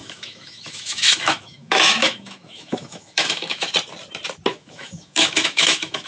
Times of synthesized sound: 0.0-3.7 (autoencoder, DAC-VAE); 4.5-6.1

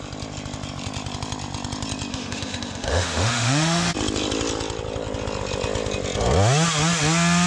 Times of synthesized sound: 2.1-3.9 (autoencoder, DAC-VAE)

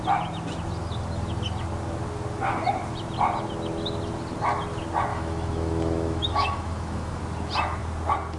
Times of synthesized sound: 5.1-7.2 (autoencoder, DAC-VAE)

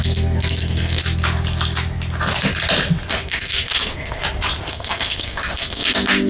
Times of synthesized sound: 0.0-1.0 (codec, SNAC); 3.1-4.2; 4.7-6.3